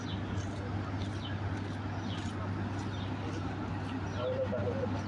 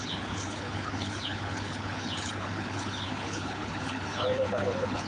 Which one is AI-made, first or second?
second